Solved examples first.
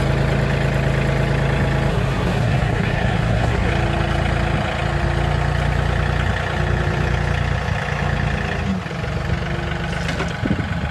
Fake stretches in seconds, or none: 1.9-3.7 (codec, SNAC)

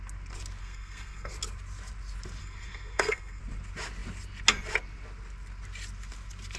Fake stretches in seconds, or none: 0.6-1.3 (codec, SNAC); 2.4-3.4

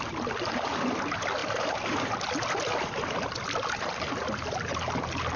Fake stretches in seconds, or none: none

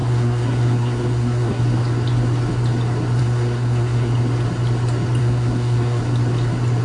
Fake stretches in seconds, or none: 0.0-1.6 (codec, SNAC); 3.2-4.1; 5.2-6.0

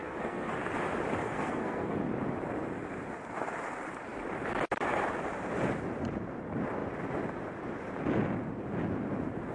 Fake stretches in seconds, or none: 0.0-0.5 (codec, SNAC); 1.2-2.0